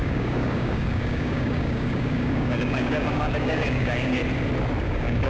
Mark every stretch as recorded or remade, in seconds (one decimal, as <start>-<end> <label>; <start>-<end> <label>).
0.0-4.2 remade; 4.2-4.8 recorded; 4.8-5.3 remade